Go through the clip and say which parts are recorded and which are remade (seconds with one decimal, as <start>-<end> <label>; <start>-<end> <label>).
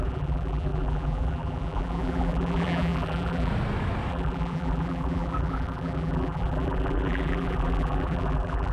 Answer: 0.0-3.5 remade; 3.5-4.1 recorded; 4.1-8.7 remade